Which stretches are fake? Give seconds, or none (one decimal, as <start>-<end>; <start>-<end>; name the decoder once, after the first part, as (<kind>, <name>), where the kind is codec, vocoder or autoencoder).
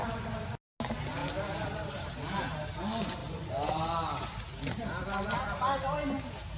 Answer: 1.2-2.1 (vocoder, BigVGAN v2)